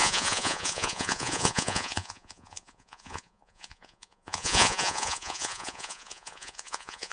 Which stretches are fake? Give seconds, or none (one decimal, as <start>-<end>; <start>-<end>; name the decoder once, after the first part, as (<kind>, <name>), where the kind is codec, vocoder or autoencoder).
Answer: 0.0-7.1 (vocoder, Vocos)